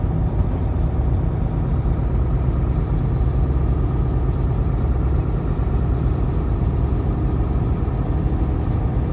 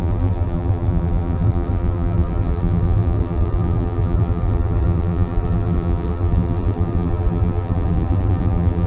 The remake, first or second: second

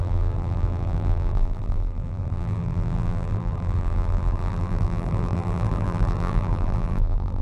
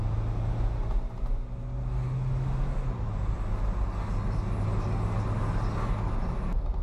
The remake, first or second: first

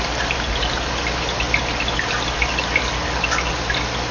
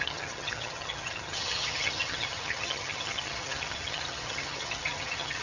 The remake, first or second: second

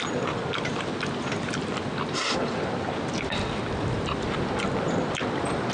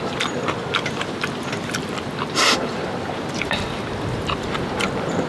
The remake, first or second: second